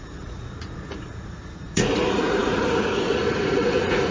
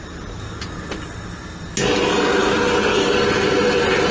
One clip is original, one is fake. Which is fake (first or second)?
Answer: first